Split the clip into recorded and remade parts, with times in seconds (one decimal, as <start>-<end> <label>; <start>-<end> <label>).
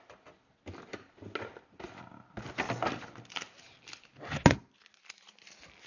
0.0-5.9 recorded